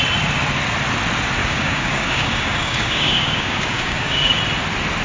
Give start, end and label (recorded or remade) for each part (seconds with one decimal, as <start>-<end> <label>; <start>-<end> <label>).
0.0-1.4 recorded; 1.4-4.4 remade; 4.4-5.0 recorded

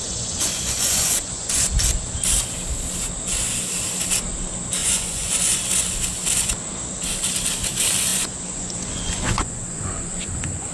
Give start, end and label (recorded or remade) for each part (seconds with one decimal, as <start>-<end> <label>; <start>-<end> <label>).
0.0-1.7 remade; 1.7-4.8 recorded; 4.8-5.6 remade; 5.6-8.1 recorded; 8.1-10.7 remade

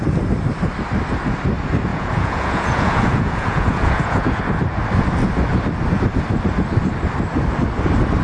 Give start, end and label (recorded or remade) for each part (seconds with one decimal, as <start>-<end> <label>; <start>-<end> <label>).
0.0-1.9 recorded; 1.9-4.4 remade; 4.4-8.2 recorded

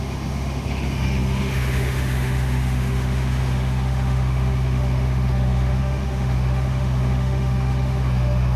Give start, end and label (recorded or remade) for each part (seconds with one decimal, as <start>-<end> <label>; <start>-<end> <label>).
0.0-8.6 remade

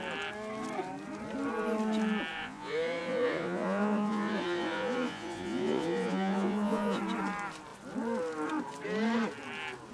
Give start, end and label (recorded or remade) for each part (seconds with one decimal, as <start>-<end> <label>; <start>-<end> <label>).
0.0-2.3 recorded; 2.3-7.0 remade; 7.0-9.9 recorded

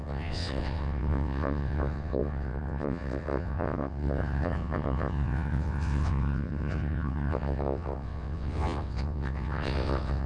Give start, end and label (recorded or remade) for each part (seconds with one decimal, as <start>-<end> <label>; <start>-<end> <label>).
0.0-10.3 remade

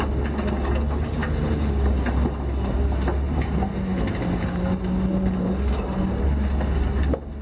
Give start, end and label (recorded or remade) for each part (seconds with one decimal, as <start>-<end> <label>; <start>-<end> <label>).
0.0-7.4 recorded

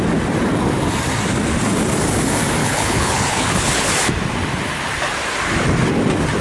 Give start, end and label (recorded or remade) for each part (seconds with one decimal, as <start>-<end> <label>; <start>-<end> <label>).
0.0-2.6 recorded; 2.6-3.9 remade; 3.9-6.4 recorded